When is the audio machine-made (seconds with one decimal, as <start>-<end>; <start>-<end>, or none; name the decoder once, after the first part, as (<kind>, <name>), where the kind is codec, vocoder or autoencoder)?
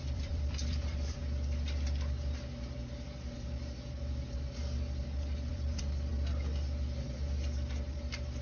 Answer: 0.0-1.2 (vocoder, BigVGAN v2); 5.5-6.1